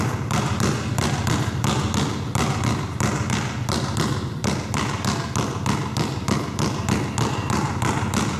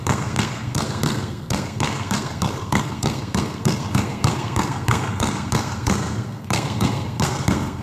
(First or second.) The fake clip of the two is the second